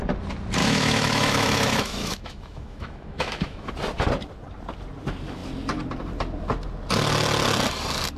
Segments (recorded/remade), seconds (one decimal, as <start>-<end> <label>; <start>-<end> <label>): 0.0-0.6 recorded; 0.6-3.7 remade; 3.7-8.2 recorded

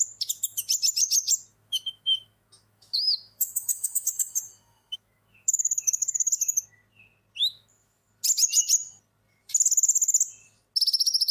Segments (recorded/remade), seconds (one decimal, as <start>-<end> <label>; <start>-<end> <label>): 0.0-1.5 recorded; 1.5-6.3 remade; 6.3-7.4 recorded; 7.4-8.1 remade; 8.1-11.3 recorded

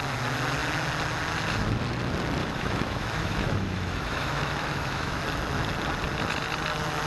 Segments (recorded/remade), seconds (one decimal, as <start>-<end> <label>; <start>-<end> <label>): 0.0-2.4 recorded; 2.4-5.2 remade; 5.2-7.1 recorded

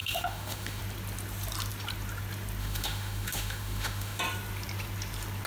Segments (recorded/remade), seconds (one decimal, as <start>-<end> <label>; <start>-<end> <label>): 0.0-0.8 remade; 0.8-2.6 recorded; 2.6-4.2 remade; 4.2-5.5 recorded

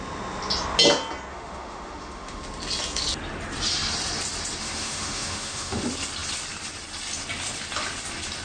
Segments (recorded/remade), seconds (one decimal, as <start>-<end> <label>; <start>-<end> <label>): 0.0-1.3 recorded; 1.3-2.4 remade; 2.4-4.6 recorded; 4.6-5.8 remade; 5.8-8.4 recorded

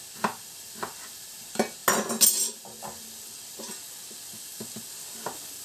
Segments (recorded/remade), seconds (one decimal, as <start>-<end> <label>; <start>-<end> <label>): 0.0-5.6 recorded

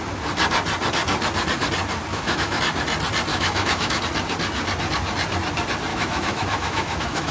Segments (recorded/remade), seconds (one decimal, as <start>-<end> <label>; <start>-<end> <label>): 0.0-2.1 recorded; 2.1-2.6 remade; 2.6-3.3 recorded; 3.3-4.0 remade; 4.0-5.9 recorded; 5.9-7.3 remade

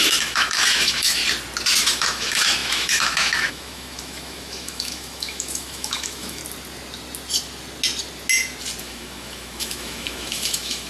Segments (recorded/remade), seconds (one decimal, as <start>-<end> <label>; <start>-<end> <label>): 0.0-1.2 remade; 1.2-1.8 recorded; 1.8-6.4 remade; 6.4-8.8 recorded; 8.8-10.9 remade